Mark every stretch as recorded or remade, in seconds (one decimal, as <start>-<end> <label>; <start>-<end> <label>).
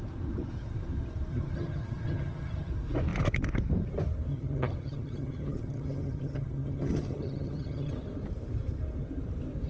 0.0-1.3 recorded; 1.3-2.7 remade; 2.7-4.3 recorded; 4.3-7.9 remade; 7.9-9.7 recorded